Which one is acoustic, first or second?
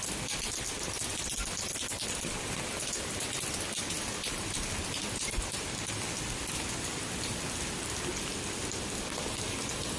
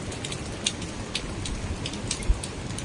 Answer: first